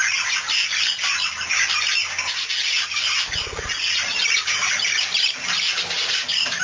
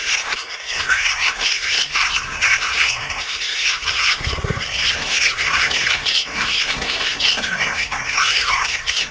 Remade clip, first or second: second